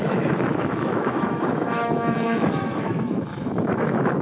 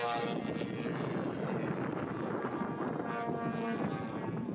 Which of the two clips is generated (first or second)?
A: first